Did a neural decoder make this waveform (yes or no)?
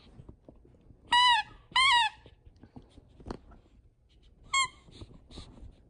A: no